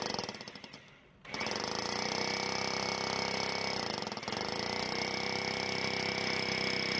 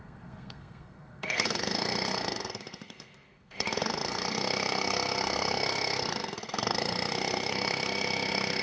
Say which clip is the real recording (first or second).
first